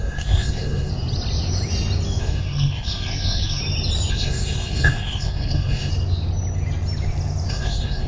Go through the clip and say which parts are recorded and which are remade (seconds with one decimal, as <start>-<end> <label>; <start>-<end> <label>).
0.0-0.9 remade; 0.9-2.2 recorded; 2.2-3.6 remade; 3.6-4.1 recorded; 4.1-5.9 remade; 5.9-7.5 recorded; 7.5-8.1 remade